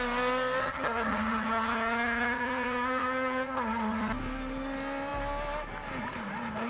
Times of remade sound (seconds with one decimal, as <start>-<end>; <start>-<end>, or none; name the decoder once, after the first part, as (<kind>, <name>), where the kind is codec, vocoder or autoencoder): 0.6-4.1 (vocoder, HiFi-GAN)